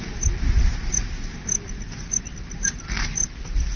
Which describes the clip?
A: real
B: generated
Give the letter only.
A